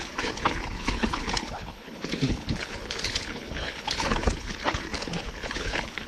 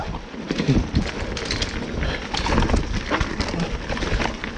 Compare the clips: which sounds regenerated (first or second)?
first